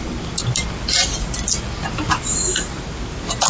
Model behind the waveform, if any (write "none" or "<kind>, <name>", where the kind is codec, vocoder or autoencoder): none